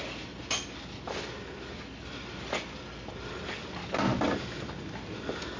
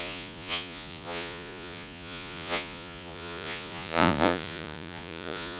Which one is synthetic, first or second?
second